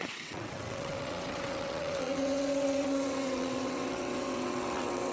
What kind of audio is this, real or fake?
fake